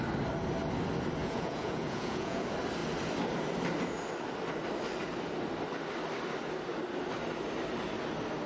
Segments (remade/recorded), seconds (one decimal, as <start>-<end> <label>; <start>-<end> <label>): 0.0-1.2 recorded; 1.2-2.4 remade; 2.4-8.5 recorded